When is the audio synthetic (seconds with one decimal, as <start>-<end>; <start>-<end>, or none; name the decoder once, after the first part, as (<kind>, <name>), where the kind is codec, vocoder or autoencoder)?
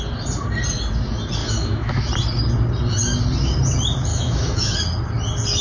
1.4-2.1 (autoencoder, DAC-VAE); 4.1-4.8